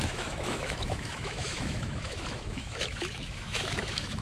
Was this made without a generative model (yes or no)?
no